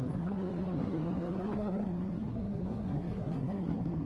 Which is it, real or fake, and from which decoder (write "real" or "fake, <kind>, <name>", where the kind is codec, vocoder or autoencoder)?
fake, codec, SNAC